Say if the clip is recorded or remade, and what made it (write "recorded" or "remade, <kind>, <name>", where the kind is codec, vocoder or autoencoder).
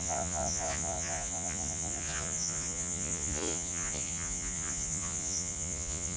remade, vocoder, Vocos